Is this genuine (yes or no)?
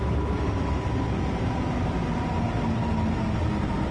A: yes